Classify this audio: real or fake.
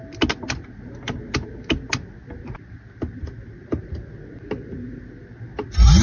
real